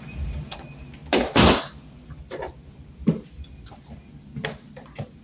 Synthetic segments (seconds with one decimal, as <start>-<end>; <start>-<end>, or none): none